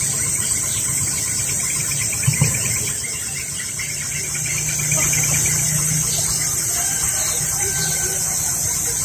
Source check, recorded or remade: recorded